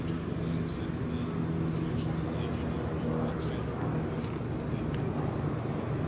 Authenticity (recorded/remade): recorded